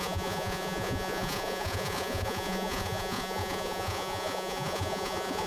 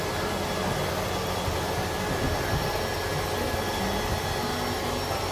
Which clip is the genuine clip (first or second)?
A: second